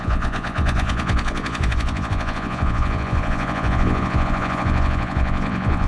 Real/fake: fake